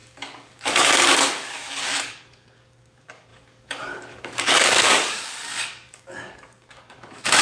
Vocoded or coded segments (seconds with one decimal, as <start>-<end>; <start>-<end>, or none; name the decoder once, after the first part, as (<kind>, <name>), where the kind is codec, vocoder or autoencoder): 0.0-7.4 (codec, DAC)